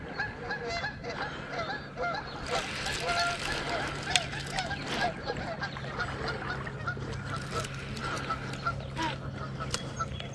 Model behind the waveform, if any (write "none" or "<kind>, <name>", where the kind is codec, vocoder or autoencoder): none